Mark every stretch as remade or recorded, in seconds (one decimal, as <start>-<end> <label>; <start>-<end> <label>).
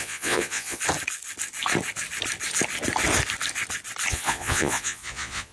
0.0-0.8 remade; 0.8-4.1 recorded; 4.1-5.5 remade